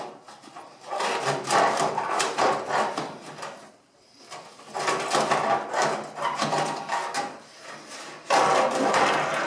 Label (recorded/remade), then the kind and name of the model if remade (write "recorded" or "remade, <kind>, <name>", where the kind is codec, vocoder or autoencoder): recorded